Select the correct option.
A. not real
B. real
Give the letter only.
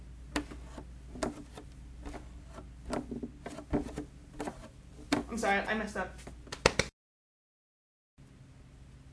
B